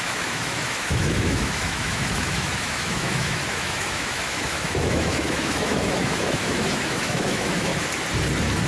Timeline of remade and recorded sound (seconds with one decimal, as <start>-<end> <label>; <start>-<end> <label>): 0.0-7.7 remade; 7.7-8.7 recorded